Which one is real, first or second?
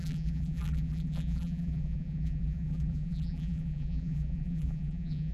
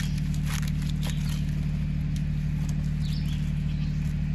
second